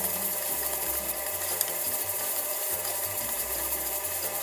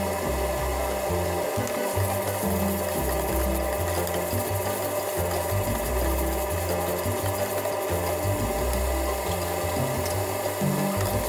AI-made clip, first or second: first